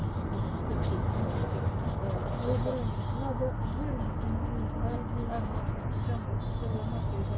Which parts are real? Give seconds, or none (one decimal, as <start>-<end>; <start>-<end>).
0.0-7.4